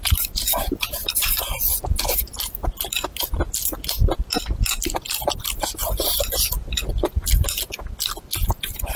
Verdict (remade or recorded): recorded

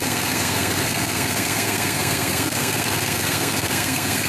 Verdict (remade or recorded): remade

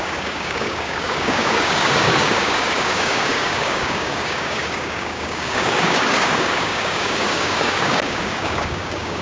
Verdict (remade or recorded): remade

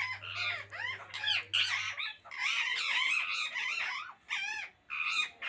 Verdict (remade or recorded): recorded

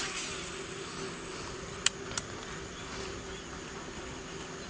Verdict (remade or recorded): recorded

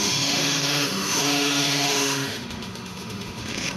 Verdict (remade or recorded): remade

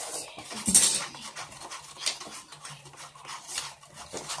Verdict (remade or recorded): recorded